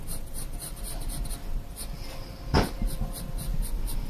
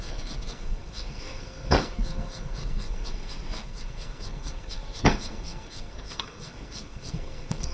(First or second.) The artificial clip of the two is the second